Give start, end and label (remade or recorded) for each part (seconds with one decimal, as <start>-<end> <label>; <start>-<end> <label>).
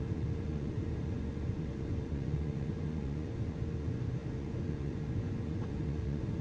0.0-6.4 remade